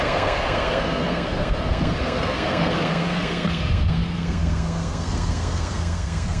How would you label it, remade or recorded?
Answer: remade